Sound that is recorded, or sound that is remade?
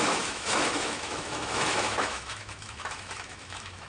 remade